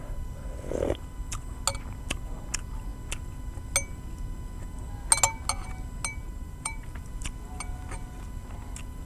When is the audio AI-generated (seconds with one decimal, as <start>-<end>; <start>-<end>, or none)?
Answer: 6.2-7.1